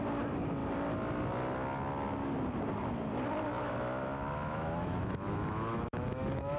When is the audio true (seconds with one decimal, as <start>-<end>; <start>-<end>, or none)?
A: 0.0-3.6

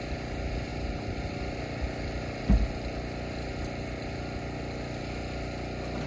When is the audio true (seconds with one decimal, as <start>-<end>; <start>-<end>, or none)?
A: 0.0-6.1

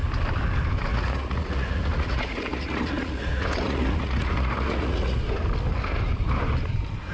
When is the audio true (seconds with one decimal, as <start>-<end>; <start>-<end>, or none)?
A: 0.0-0.9; 5.2-7.1

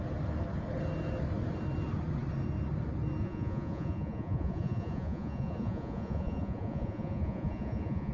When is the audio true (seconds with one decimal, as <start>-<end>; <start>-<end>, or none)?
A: 0.0-3.2

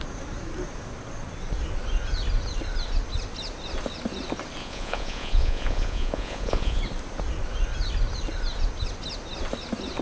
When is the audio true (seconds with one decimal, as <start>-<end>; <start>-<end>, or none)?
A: 0.0-4.6; 6.8-10.0